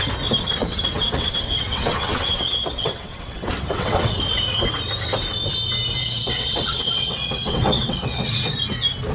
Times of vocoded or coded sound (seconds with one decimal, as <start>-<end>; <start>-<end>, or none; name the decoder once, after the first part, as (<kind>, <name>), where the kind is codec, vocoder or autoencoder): 0.6-4.2 (vocoder, WaveNeXt); 6.0-8.4